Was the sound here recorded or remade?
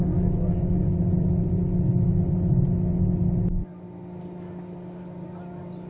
recorded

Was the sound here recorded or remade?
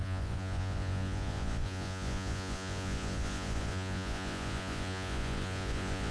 remade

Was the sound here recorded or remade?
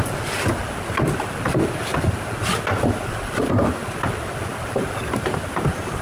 recorded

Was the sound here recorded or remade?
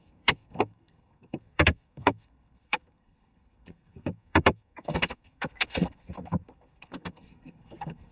remade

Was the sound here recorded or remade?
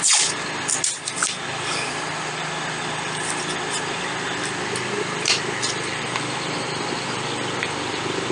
recorded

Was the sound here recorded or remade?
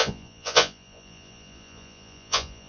remade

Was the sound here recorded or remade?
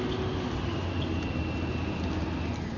recorded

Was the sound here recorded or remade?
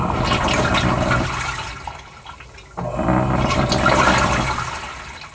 recorded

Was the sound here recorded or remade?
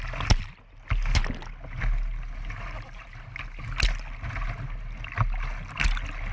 recorded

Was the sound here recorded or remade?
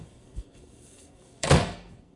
remade